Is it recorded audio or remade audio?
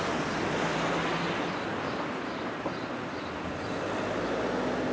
recorded